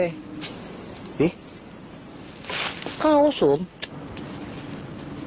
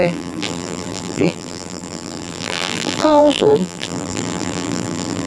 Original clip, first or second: first